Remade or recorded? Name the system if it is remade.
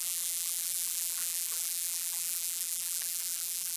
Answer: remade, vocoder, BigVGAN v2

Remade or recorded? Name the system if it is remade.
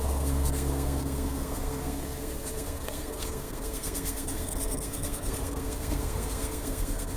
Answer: remade, codec, SNAC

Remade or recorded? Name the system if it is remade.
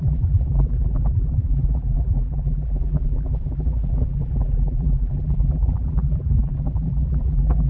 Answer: remade, vocoder, BigVGAN v2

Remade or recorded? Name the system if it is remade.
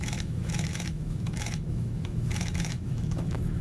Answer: remade, autoencoder, DAC-VAE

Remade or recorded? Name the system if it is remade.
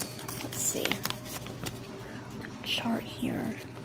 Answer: recorded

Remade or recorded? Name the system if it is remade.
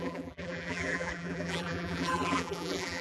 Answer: remade, vocoder, BigVGAN v2